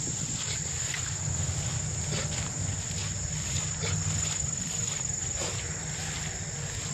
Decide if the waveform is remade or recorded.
recorded